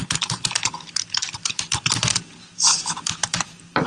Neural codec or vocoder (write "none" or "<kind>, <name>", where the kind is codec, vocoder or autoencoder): vocoder, BigVGAN v2